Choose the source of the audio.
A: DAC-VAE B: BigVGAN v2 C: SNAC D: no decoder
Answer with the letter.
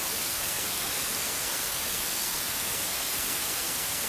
C